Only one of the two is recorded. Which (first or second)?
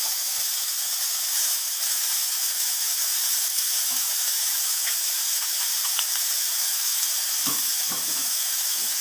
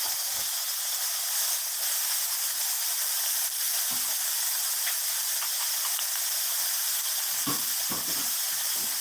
second